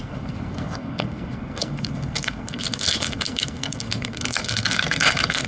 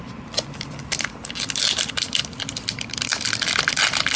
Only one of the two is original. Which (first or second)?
second